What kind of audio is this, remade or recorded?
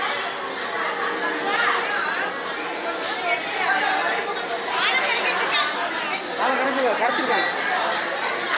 recorded